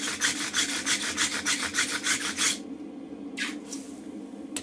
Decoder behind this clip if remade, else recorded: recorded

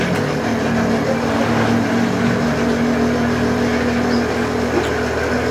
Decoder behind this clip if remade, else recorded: recorded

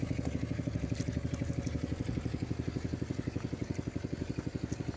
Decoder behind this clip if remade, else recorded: recorded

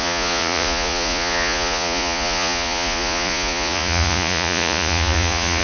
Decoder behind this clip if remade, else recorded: remade, vocoder, Vocos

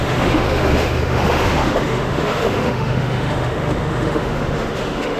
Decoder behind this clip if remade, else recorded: remade, autoencoder, DAC-VAE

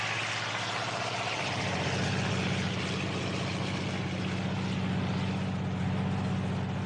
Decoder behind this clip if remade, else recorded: recorded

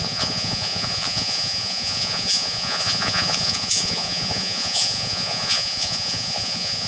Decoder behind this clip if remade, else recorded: remade, vocoder, Vocos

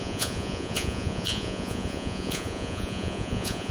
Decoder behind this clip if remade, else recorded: remade, vocoder, Vocos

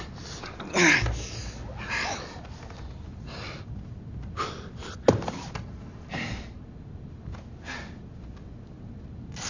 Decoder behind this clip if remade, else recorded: recorded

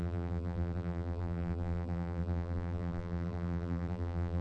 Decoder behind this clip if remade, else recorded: remade, vocoder, BigVGAN v2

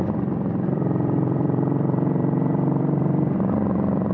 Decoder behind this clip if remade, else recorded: remade, vocoder, BigVGAN v2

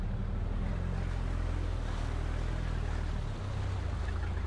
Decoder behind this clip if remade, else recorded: recorded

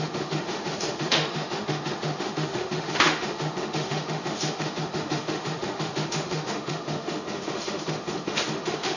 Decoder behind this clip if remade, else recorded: remade, autoencoder, DAC-VAE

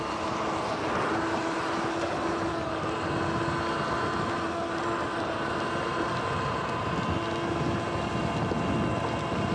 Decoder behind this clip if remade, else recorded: recorded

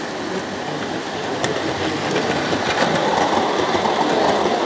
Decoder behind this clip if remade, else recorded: recorded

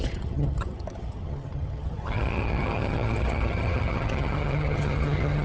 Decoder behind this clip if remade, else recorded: remade, vocoder, HiFi-GAN